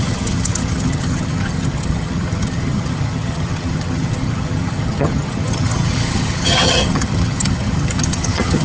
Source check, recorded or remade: remade